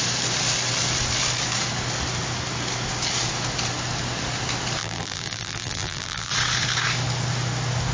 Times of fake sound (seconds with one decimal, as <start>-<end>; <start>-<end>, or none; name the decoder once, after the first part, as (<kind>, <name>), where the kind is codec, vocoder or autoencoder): 4.8-6.3 (vocoder, BigVGAN v2)